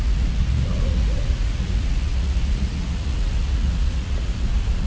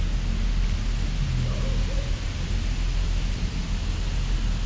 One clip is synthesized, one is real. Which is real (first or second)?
second